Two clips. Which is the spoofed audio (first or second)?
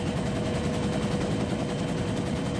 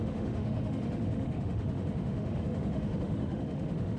second